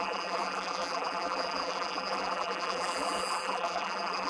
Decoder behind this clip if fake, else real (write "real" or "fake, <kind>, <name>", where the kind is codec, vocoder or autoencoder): fake, vocoder, BigVGAN v2